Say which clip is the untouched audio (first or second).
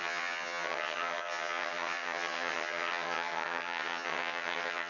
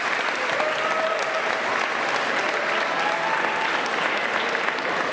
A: second